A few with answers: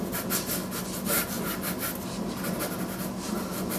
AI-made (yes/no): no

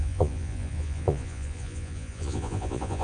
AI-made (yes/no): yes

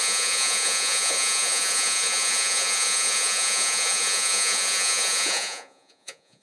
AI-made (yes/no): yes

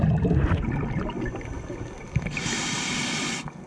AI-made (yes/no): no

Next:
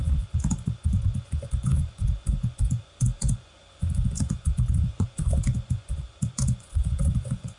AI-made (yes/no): yes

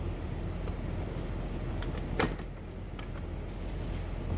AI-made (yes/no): no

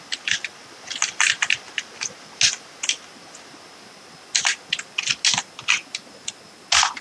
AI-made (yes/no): no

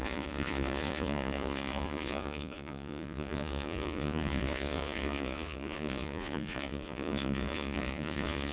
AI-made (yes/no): yes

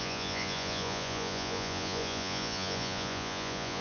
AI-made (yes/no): yes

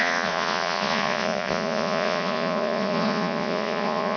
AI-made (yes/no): yes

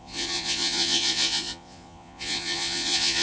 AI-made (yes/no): yes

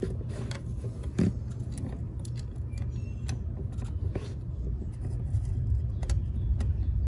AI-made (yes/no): no